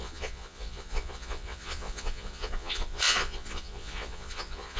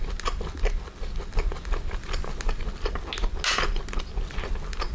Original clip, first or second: second